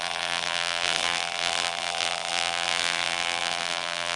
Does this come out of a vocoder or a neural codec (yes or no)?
yes